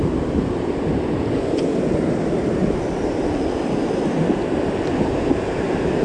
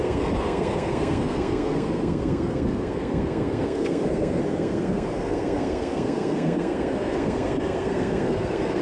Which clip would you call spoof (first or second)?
second